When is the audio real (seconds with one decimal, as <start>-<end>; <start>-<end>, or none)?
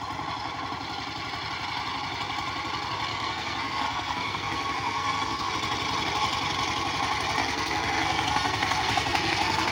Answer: 0.0-3.1; 5.5-7.4